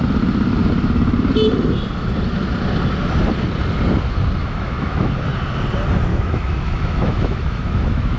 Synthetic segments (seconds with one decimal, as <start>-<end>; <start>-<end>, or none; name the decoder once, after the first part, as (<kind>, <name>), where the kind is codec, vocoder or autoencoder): 4.4-5.1 (autoencoder, DAC-VAE); 6.1-8.2